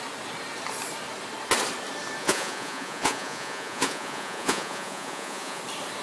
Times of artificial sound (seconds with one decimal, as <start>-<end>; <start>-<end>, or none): 2.2-5.6